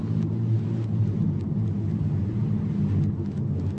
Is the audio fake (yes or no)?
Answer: no